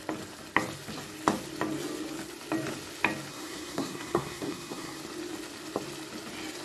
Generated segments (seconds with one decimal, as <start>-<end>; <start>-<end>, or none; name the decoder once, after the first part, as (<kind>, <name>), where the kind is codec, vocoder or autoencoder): 3.3-5.0 (codec, SNAC)